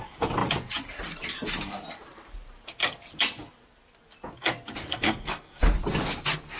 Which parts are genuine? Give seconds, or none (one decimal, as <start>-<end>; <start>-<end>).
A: 0.0-4.9; 5.6-6.6